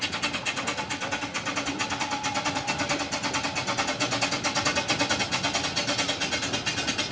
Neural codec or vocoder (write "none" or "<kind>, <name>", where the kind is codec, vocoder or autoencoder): none